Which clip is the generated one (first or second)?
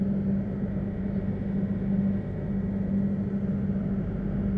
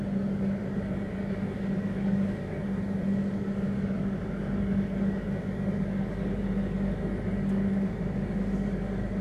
second